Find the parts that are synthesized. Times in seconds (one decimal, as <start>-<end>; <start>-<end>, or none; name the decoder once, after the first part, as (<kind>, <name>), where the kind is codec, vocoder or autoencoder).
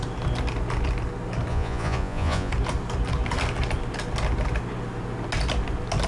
1.5-2.5 (vocoder, Vocos)